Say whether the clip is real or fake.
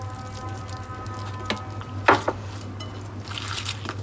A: real